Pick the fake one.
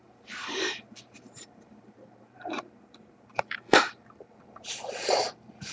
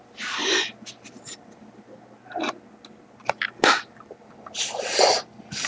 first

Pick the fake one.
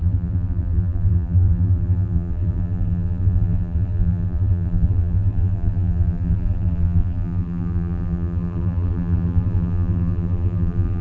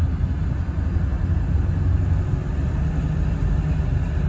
first